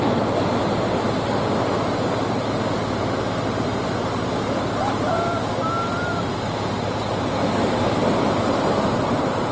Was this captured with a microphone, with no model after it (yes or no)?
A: yes